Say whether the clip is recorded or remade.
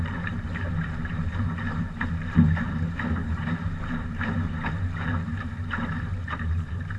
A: remade